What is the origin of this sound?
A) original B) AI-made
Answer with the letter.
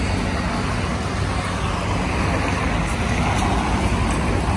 A